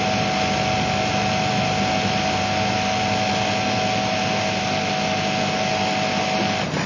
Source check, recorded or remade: recorded